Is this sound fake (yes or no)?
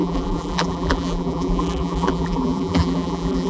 yes